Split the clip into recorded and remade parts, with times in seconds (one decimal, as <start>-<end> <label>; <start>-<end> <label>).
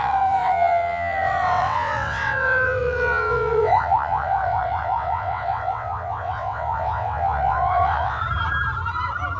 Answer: 0.0-8.2 remade; 8.2-9.4 recorded